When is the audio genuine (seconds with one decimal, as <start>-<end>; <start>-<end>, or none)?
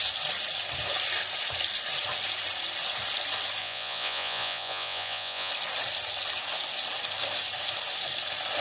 0.0-3.6; 5.5-8.6